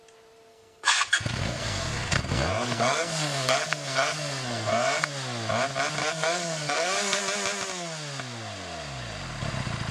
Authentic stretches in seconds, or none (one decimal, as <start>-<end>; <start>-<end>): 0.0-0.5; 5.1-6.0; 7.2-9.9